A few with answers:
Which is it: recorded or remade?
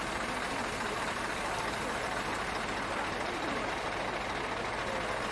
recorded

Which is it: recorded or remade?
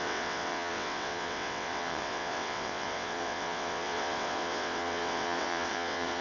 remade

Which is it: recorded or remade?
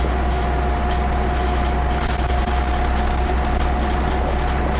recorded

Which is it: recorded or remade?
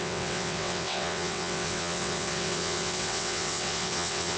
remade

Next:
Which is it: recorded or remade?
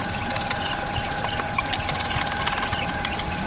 recorded